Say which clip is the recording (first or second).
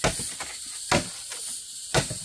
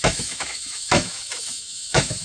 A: first